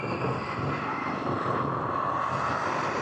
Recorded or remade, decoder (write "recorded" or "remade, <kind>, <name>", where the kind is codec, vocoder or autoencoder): recorded